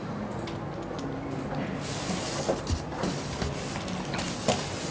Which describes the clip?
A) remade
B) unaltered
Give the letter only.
B